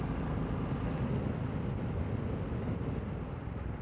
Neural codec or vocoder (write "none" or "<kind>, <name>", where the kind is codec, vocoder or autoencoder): none